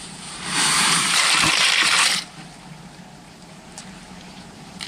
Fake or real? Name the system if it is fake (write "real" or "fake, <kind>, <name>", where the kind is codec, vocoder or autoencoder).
fake, vocoder, BigVGAN v2